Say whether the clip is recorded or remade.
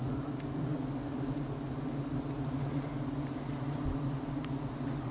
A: recorded